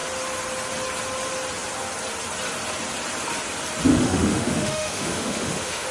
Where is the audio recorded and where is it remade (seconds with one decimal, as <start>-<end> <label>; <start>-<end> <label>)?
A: 0.0-3.9 recorded; 3.9-5.9 remade

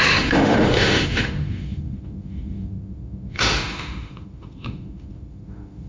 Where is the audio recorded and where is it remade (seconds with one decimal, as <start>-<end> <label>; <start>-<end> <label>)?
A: 0.0-5.9 remade

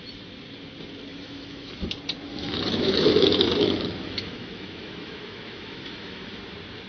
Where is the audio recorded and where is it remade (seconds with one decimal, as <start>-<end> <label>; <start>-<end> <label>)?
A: 0.0-1.1 recorded; 1.1-1.9 remade; 1.9-2.3 recorded; 2.3-6.4 remade; 6.4-6.9 recorded

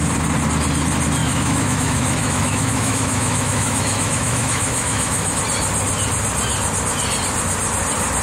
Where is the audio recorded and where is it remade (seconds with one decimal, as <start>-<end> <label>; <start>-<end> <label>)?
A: 0.0-1.2 recorded; 1.2-5.4 remade; 5.4-8.2 recorded

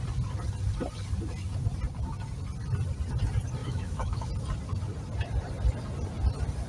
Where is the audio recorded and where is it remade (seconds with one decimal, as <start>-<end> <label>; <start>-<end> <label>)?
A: 0.0-3.6 recorded; 3.6-4.3 remade; 4.3-6.7 recorded

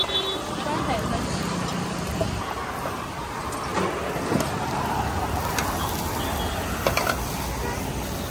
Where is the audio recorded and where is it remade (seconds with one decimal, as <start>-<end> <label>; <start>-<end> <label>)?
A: 0.0-8.3 recorded